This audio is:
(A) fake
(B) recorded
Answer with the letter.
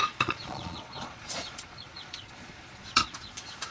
A